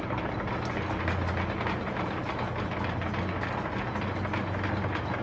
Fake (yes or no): no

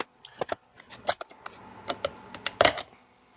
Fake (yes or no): no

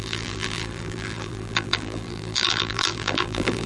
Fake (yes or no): yes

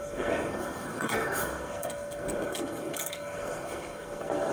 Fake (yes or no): yes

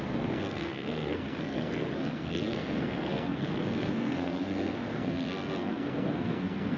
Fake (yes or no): yes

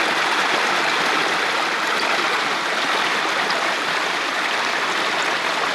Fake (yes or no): no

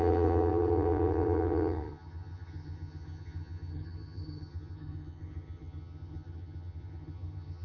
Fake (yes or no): yes